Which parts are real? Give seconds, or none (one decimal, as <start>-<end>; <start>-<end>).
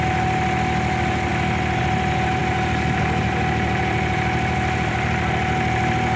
0.0-6.2